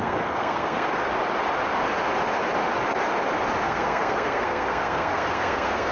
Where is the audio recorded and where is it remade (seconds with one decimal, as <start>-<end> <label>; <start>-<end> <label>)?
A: 0.0-1.1 remade; 1.1-3.6 recorded; 3.6-5.9 remade